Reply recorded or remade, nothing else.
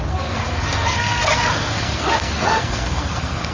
remade